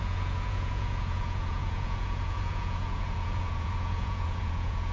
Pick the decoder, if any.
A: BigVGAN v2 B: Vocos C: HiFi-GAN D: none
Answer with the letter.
B